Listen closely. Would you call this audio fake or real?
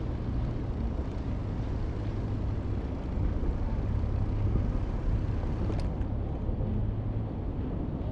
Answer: real